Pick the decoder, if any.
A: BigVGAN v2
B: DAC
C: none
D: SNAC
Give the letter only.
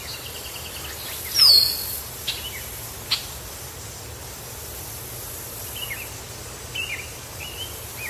C